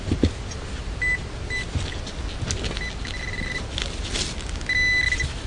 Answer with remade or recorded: recorded